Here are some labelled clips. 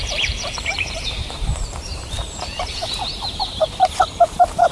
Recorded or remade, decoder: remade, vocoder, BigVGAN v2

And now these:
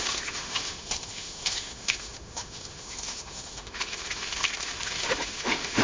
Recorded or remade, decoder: remade, autoencoder, DAC-VAE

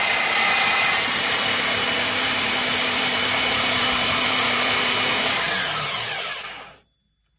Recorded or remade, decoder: remade, vocoder, BigVGAN v2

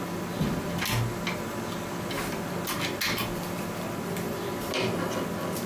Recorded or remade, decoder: recorded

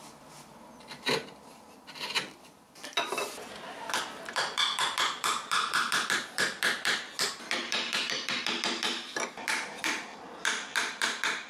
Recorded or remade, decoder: remade, vocoder, BigVGAN v2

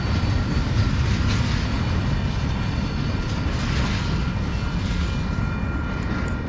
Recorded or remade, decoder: recorded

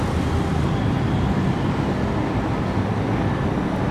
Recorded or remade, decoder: recorded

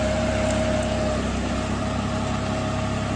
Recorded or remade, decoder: recorded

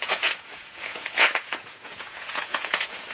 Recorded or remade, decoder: remade, vocoder, Vocos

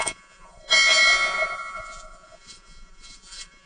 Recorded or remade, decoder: remade, vocoder, Vocos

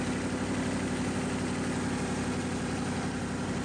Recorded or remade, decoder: recorded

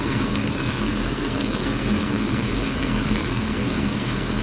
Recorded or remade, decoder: remade, codec, SNAC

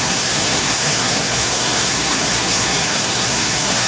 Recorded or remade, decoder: remade, codec, SNAC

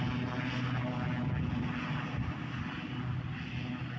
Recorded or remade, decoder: recorded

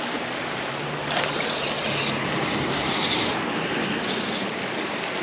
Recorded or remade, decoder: recorded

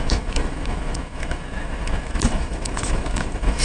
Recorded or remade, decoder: remade, autoencoder, DAC-VAE